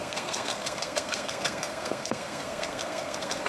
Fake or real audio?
fake